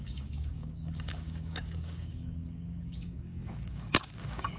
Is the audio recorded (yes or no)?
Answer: no